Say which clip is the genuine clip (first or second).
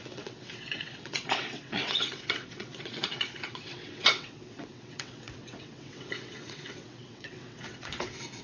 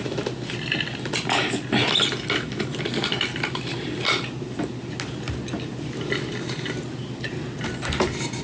second